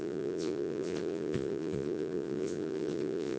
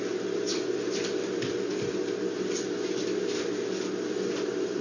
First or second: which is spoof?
first